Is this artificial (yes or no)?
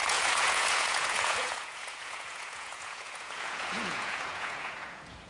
yes